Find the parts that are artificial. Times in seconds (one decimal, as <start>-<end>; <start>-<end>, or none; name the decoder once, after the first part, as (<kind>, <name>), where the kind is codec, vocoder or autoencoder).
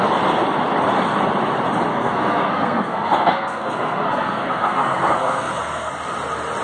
1.9-5.9 (codec, SNAC)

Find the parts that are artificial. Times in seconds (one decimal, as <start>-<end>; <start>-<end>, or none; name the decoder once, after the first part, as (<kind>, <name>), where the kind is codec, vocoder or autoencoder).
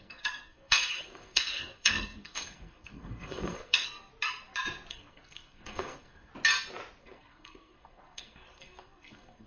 0.0-4.1 (codec, SNAC); 4.9-6.3; 7.0-9.5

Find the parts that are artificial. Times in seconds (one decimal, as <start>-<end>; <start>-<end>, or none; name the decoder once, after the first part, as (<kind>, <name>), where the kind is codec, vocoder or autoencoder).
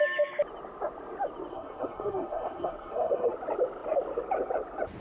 1.5-3.3 (codec, SNAC)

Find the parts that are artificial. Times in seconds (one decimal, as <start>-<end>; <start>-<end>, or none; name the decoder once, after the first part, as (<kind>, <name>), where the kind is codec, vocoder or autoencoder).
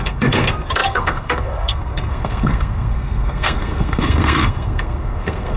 0.0-5.6 (codec, SNAC)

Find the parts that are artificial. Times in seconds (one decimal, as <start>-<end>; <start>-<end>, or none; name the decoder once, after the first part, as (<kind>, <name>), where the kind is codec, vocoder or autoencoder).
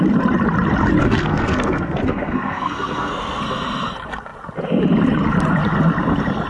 1.0-3.4 (codec, SNAC)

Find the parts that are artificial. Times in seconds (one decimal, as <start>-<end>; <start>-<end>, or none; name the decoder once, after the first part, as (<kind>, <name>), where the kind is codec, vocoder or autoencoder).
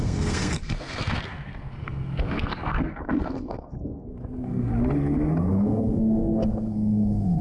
0.0-4.7 (codec, SNAC); 5.5-7.4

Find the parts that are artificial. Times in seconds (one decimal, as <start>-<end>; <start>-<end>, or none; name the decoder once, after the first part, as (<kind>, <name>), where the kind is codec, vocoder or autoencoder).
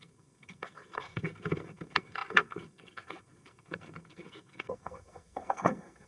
0.0-6.1 (codec, SNAC)